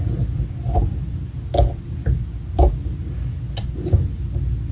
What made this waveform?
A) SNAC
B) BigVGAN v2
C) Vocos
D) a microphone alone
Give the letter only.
D